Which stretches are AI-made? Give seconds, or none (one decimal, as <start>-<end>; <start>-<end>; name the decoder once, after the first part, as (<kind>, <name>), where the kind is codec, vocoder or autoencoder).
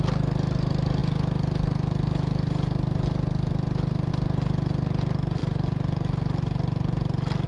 none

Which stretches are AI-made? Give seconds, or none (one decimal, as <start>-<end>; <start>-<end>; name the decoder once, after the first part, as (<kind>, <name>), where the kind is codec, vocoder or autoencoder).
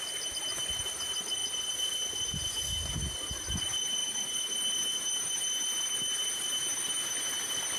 none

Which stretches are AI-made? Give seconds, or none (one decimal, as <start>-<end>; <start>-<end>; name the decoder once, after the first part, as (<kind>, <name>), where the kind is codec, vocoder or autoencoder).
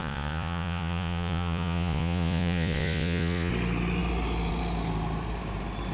0.0-3.5 (vocoder, Vocos)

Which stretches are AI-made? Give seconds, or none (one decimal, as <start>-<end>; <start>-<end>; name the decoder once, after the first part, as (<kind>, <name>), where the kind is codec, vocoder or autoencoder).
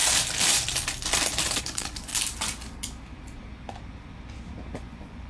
1.6-2.1 (vocoder, Vocos); 4.7-5.3